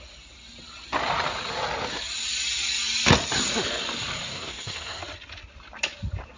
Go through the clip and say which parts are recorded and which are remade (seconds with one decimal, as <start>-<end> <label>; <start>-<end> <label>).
0.0-4.3 recorded; 4.3-5.0 remade; 5.0-6.4 recorded